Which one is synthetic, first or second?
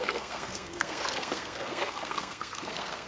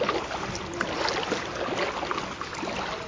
first